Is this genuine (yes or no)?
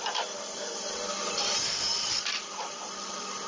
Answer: yes